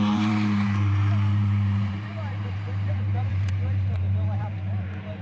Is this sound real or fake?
fake